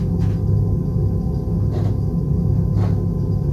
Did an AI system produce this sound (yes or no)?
no